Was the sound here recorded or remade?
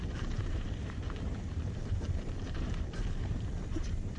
remade